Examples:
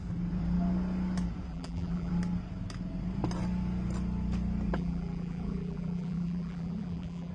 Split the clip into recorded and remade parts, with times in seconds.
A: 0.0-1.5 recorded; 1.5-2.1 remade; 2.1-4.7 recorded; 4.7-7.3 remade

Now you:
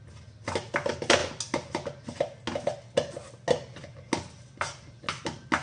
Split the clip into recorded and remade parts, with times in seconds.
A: 0.0-5.6 recorded

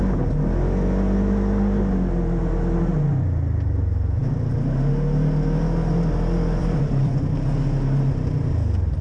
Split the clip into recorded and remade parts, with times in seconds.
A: 0.0-6.6 recorded; 6.6-7.1 remade; 7.1-9.0 recorded

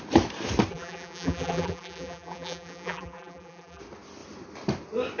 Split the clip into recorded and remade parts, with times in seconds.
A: 0.0-0.7 recorded; 0.7-3.8 remade; 3.8-5.2 recorded

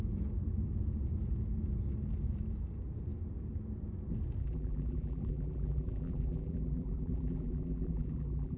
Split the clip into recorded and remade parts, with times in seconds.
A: 0.0-4.4 recorded; 4.4-8.6 remade

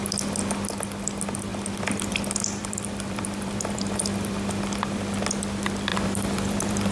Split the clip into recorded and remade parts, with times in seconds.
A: 0.0-2.6 recorded; 2.6-4.0 remade; 4.0-5.9 recorded; 5.9-6.9 remade

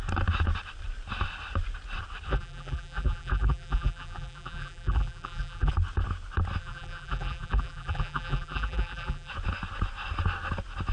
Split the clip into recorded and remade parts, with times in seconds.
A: 0.0-2.3 recorded; 2.3-5.7 remade; 5.7-6.6 recorded; 6.6-9.3 remade; 9.3-10.9 recorded